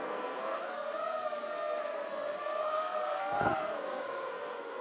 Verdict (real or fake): fake